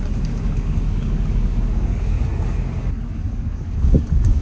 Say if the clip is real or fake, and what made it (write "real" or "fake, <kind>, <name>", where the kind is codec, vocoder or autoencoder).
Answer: fake, codec, DAC